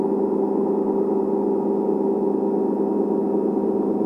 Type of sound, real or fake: real